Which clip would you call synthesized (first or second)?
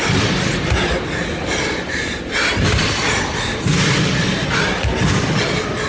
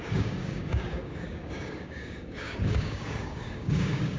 second